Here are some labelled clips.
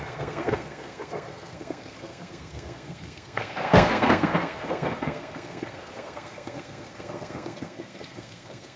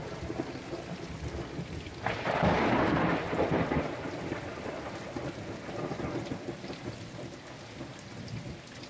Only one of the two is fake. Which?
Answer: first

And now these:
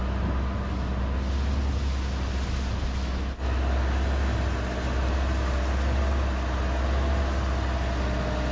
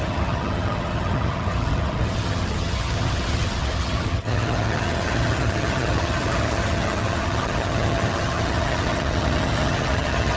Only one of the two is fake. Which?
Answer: second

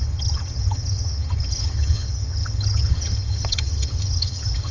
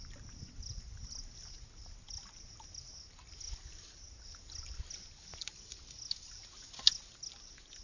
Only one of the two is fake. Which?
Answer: first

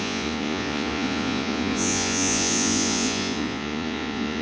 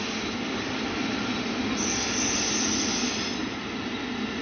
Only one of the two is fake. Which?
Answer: first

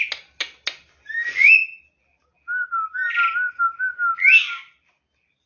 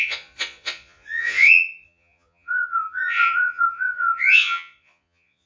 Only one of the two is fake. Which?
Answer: second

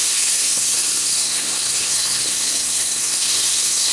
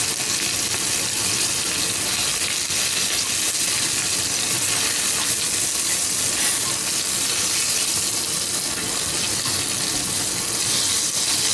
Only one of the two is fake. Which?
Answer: first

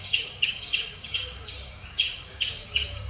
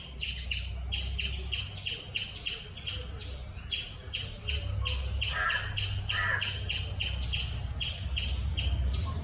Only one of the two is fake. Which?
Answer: first